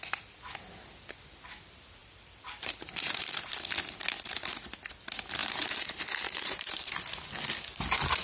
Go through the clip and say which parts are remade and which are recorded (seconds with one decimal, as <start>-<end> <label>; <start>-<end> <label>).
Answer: 0.0-2.0 recorded; 2.0-3.5 remade; 3.5-5.4 recorded; 5.4-6.9 remade; 6.9-8.2 recorded